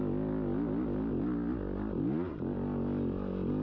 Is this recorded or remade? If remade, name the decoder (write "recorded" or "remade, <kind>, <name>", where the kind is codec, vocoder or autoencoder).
recorded